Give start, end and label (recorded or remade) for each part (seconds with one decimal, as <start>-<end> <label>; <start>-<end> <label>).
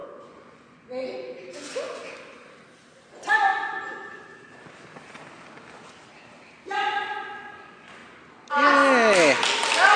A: 0.0-1.5 remade; 1.5-3.1 recorded; 3.1-3.5 remade; 3.5-7.4 recorded; 7.4-8.0 remade; 8.0-10.0 recorded